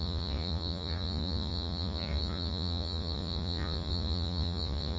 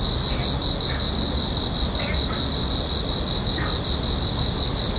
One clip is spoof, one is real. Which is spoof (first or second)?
first